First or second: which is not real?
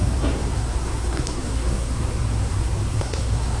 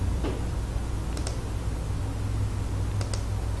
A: first